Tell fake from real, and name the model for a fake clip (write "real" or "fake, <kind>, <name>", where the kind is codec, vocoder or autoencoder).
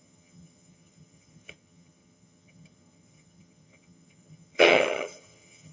fake, vocoder, HiFi-GAN